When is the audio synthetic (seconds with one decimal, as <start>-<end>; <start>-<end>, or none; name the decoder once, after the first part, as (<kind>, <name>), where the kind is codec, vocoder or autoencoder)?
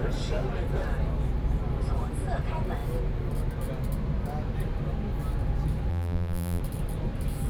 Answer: 5.9-6.6 (vocoder, BigVGAN v2)